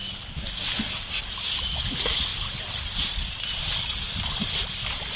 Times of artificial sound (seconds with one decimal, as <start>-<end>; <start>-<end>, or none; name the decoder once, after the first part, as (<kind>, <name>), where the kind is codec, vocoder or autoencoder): none